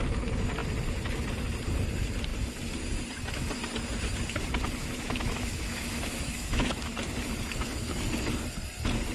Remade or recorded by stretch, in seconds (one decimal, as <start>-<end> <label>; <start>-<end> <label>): 0.0-4.8 recorded; 4.8-6.9 remade; 6.9-9.1 recorded